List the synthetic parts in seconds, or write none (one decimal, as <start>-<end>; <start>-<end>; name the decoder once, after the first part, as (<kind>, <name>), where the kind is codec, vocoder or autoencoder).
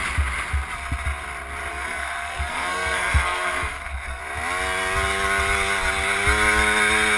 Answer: 1.7-4.2 (codec, SNAC)